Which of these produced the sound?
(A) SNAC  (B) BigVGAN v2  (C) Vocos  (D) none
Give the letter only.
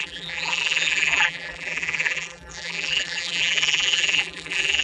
B